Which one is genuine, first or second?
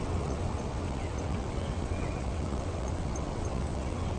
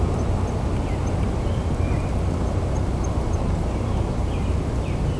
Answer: second